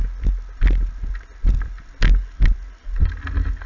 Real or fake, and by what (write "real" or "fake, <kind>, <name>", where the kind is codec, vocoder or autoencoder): real